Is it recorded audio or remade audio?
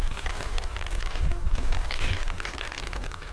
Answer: remade